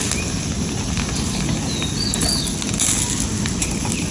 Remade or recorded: recorded